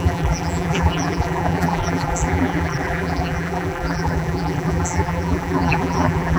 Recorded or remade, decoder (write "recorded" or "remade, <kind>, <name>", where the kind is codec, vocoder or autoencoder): remade, vocoder, BigVGAN v2